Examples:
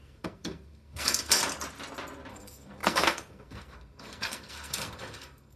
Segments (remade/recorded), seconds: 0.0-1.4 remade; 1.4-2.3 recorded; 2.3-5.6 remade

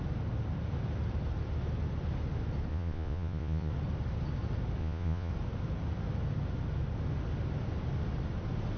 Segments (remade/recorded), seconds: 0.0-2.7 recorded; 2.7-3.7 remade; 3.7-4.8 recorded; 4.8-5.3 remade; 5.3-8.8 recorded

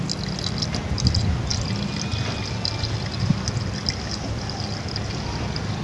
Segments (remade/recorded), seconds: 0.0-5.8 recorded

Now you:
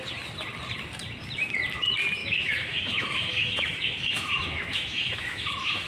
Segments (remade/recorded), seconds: 0.0-2.2 recorded; 2.2-5.9 remade

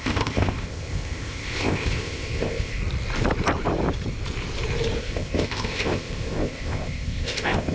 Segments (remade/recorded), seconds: 0.0-2.8 remade; 2.8-5.0 recorded; 5.0-7.7 remade

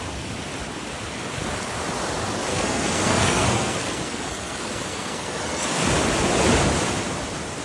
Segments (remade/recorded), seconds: 0.0-2.5 recorded; 2.5-5.8 remade; 5.8-7.6 recorded

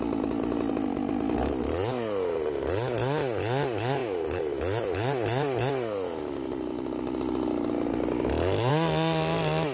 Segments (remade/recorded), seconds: 0.0-9.7 recorded